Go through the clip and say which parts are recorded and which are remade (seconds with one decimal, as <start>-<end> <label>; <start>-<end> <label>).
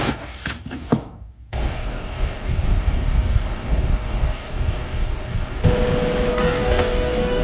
0.0-5.6 remade; 5.6-6.3 recorded; 6.3-7.4 remade